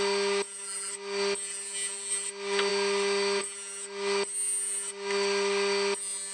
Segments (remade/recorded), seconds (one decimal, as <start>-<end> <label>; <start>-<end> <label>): 0.0-6.3 recorded